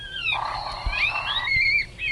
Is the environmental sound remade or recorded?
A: recorded